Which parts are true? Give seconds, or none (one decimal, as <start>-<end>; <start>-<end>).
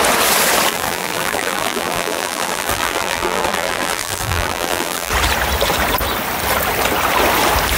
0.0-0.7; 5.1-7.8